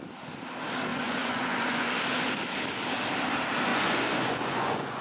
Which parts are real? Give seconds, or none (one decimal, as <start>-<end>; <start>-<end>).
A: 0.0-0.9; 1.9-3.7